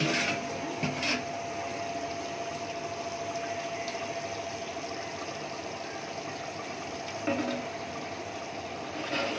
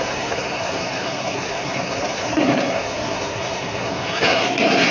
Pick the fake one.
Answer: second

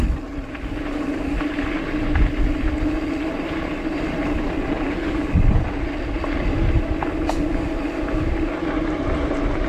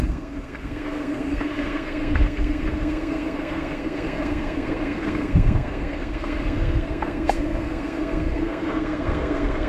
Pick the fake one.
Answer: second